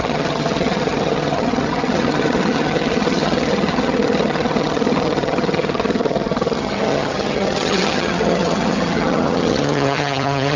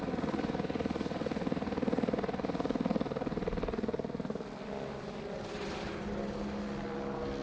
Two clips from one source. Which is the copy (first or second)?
first